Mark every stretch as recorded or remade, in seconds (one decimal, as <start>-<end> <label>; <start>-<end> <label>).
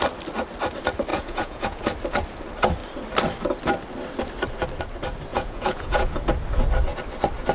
0.0-1.1 recorded; 1.1-1.8 remade; 1.8-5.3 recorded; 5.3-6.1 remade; 6.1-7.5 recorded